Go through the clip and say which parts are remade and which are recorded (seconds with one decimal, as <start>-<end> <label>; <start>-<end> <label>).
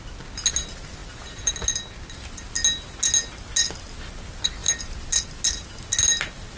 0.0-6.6 recorded